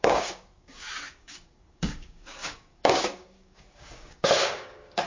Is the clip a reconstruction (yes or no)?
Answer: yes